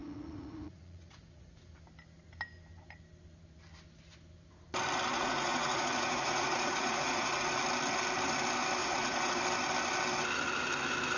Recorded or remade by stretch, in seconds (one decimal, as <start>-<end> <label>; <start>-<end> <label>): 0.0-1.5 remade; 1.5-5.1 recorded; 5.1-7.5 remade; 7.5-8.8 recorded; 8.8-9.4 remade; 9.4-11.2 recorded